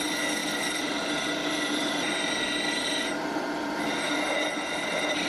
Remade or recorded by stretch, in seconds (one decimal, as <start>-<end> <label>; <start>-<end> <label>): 0.0-0.4 recorded; 0.4-1.0 remade; 1.0-5.3 recorded